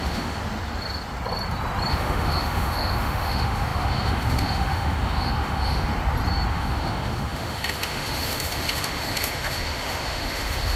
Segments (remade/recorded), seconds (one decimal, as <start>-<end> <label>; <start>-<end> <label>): 0.0-0.4 remade; 0.4-1.9 recorded; 1.9-5.9 remade; 5.9-6.5 recorded; 6.5-10.8 remade